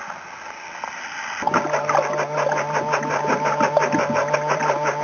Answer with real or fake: real